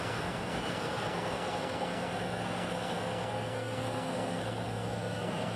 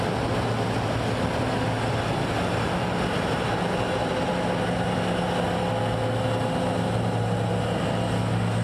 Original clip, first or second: second